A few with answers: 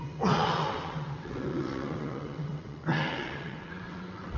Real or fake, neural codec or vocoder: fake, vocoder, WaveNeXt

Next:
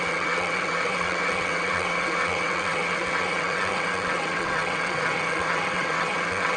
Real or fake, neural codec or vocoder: fake, vocoder, WaveNeXt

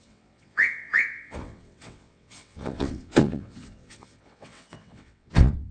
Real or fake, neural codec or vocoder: fake, vocoder, WaveNeXt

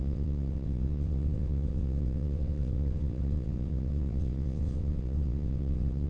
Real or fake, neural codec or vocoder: fake, vocoder, WaveNeXt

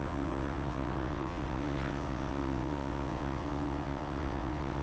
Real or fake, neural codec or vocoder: fake, vocoder, WaveNeXt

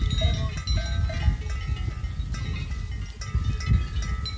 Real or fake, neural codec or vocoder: real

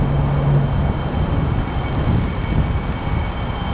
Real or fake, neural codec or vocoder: real